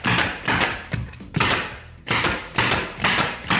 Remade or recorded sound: recorded